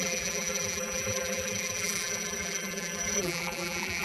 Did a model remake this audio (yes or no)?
yes